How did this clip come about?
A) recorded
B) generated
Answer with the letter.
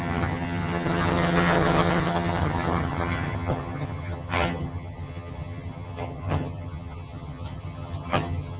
B